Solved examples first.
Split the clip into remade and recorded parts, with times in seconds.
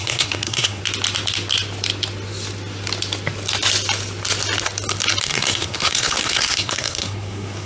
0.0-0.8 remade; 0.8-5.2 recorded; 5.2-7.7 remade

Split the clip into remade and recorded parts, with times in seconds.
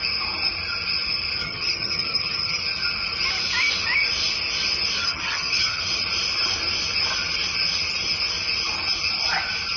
0.0-1.4 recorded; 1.4-2.6 remade; 2.6-5.0 recorded; 5.0-5.8 remade; 5.8-9.8 recorded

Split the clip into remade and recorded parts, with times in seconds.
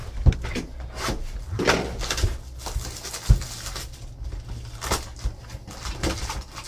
0.0-6.7 recorded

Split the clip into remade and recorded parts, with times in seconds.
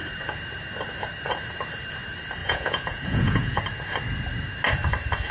0.0-2.4 recorded; 2.4-3.6 remade; 3.6-5.3 recorded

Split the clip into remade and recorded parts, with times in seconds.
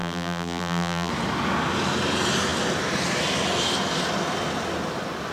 0.0-1.1 remade; 1.1-5.3 recorded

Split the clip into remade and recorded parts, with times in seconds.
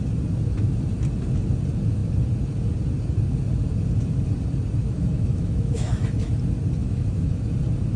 0.0-4.8 recorded; 4.8-6.3 remade; 6.3-6.8 recorded; 6.8-7.4 remade; 7.4-8.0 recorded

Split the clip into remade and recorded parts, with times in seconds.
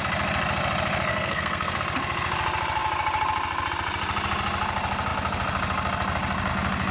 0.0-1.1 recorded; 1.1-1.8 remade; 1.8-6.9 recorded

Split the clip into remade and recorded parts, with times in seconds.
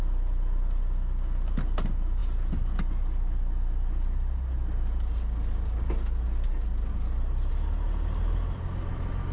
0.0-9.3 recorded